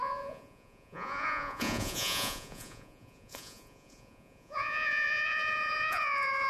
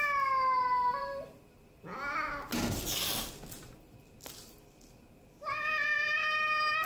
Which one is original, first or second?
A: second